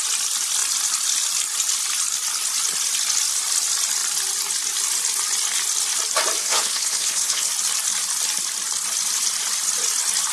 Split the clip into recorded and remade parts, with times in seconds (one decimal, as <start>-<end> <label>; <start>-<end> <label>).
0.0-6.4 recorded; 6.4-7.5 remade; 7.5-10.3 recorded